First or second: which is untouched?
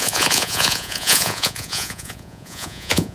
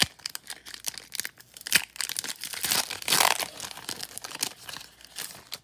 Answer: second